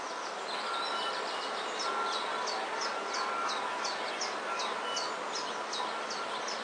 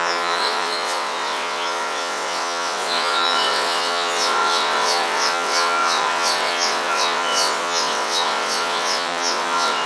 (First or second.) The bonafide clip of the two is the first